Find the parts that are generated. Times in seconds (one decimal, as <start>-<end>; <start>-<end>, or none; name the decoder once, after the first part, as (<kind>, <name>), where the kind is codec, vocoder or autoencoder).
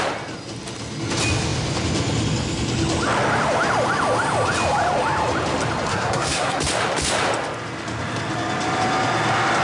5.9-6.6 (codec, SNAC)